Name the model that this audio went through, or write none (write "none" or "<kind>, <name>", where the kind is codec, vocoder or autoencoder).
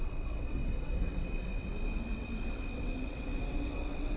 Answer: vocoder, WaveNeXt